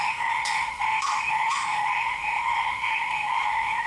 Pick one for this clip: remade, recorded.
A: remade